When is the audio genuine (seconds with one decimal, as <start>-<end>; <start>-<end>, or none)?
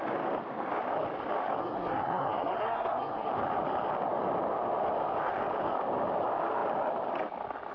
0.0-1.6; 3.3-7.7